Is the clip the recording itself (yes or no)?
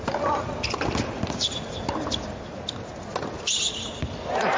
yes